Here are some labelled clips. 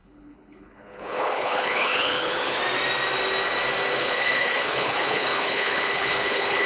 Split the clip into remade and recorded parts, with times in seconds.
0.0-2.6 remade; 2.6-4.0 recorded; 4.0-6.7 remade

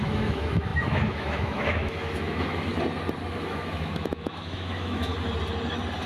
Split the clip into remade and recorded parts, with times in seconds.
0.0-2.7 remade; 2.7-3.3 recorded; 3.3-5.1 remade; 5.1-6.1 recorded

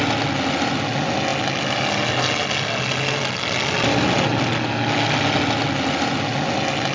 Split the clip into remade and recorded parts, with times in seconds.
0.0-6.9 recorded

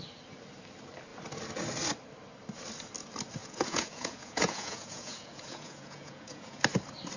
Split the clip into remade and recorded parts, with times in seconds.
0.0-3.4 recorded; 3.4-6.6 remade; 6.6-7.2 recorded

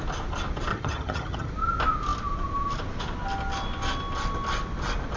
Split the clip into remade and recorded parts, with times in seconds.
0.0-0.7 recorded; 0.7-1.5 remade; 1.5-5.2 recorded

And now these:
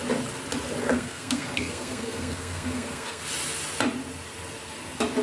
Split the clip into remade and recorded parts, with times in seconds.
0.0-0.8 recorded; 0.8-3.2 remade; 3.2-5.2 recorded